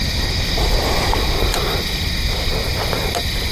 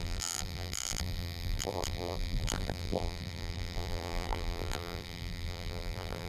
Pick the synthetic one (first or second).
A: second